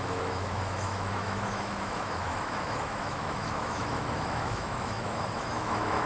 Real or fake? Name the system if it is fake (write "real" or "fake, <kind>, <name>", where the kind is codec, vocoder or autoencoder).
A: fake, autoencoder, DAC-VAE